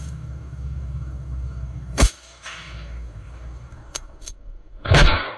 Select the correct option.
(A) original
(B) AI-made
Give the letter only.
B